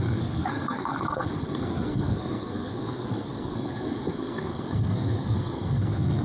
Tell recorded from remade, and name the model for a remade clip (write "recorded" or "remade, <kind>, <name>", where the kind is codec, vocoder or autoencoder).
remade, codec, SNAC